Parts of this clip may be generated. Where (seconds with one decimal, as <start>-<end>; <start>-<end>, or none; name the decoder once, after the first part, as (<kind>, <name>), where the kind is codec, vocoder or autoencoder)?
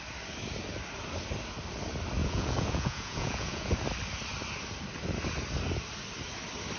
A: 2.2-3.7 (vocoder, Vocos)